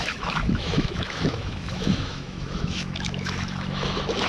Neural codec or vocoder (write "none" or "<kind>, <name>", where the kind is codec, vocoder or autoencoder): autoencoder, DAC-VAE